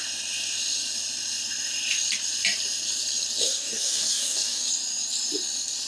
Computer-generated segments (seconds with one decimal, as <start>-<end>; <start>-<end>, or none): 3.4-4.7